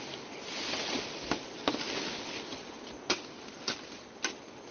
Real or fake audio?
real